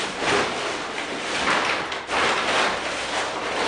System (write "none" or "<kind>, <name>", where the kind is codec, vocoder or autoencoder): none